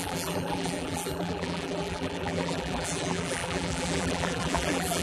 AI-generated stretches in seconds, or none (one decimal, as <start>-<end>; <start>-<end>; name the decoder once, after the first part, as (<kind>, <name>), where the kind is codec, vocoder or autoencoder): 0.0-5.0 (vocoder, BigVGAN v2)